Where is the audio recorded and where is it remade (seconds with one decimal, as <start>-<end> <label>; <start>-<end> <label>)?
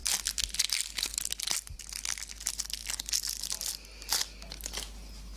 0.0-5.4 recorded